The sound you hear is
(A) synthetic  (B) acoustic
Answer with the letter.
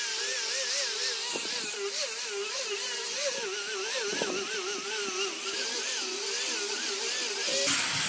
B